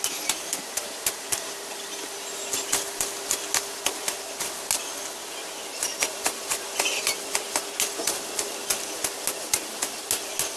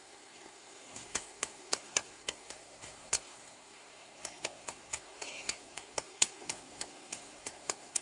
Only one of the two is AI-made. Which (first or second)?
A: second